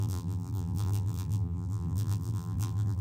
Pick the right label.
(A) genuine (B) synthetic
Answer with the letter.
B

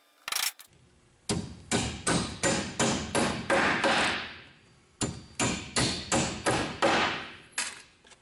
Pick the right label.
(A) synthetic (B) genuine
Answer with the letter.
B